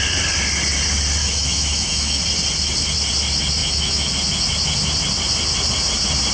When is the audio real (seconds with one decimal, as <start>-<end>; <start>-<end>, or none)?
0.0-1.2; 2.2-3.6; 4.1-6.3